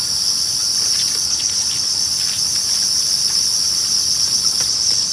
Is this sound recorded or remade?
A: recorded